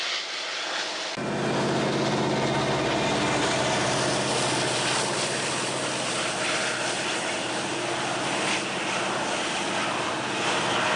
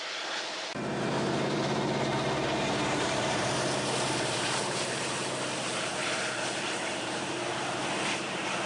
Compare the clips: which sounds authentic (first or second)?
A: first